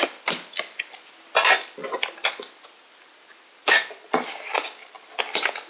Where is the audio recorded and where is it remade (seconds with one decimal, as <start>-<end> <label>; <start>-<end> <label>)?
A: 0.0-5.7 remade